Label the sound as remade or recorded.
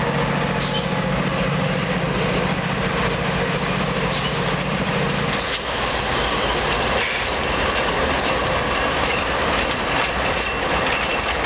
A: recorded